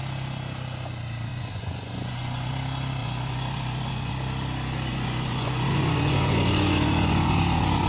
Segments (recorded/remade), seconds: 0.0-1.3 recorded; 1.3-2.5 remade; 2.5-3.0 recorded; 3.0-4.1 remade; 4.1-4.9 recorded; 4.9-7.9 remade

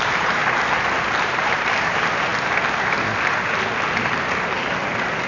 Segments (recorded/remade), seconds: 0.0-0.4 remade; 0.4-1.2 recorded; 1.2-2.3 remade; 2.3-5.3 recorded

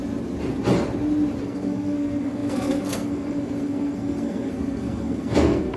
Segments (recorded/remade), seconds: 0.0-1.4 recorded; 1.4-5.8 remade

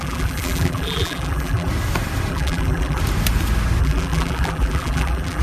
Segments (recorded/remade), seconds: 0.0-1.7 remade; 1.7-2.3 recorded; 2.3-3.0 remade; 3.0-3.8 recorded; 3.8-5.4 remade

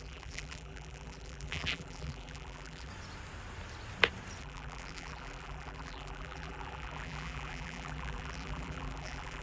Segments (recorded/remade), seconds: 0.0-2.9 remade; 2.9-4.4 recorded; 4.4-9.4 remade

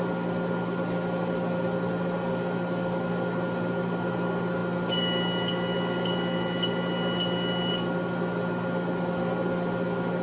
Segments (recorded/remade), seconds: 0.0-10.2 recorded

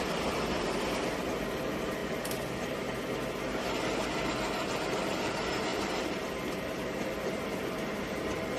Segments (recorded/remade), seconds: 0.0-5.7 recorded; 5.7-7.0 remade; 7.0-8.6 recorded